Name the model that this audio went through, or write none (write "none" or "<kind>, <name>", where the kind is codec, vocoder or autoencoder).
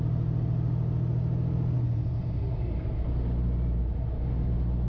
none